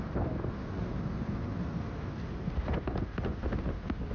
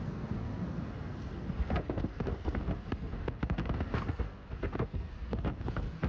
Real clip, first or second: first